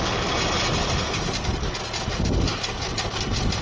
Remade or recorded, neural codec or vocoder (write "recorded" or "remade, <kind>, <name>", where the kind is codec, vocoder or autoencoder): recorded